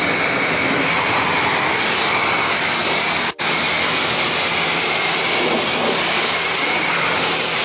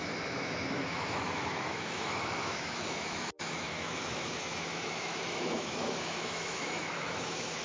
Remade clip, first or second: second